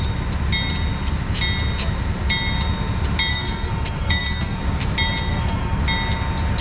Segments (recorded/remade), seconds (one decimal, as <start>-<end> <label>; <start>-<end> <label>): 0.0-3.3 recorded; 3.3-4.6 remade; 4.6-5.3 recorded; 5.3-5.8 remade; 5.8-6.6 recorded